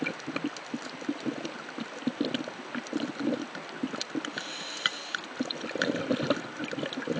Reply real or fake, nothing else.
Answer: real